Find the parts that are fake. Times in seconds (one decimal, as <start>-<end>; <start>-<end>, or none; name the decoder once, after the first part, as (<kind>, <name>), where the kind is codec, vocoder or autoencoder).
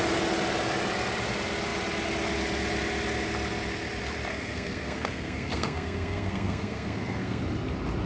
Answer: 4.3-7.4 (codec, SNAC)